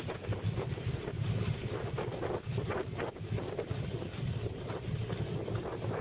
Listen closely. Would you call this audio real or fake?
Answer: real